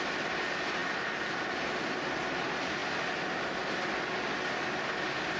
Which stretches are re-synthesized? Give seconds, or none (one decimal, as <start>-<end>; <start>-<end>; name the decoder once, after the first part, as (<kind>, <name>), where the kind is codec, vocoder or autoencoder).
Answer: none